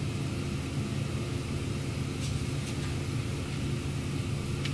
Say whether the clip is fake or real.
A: real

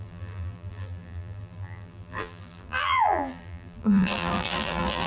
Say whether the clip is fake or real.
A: fake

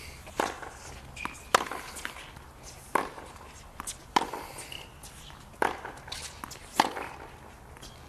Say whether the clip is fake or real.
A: real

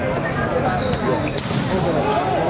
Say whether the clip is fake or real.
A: real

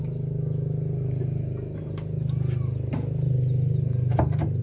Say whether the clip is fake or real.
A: real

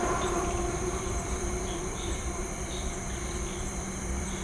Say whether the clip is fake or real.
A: fake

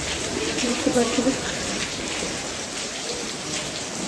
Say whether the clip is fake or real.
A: real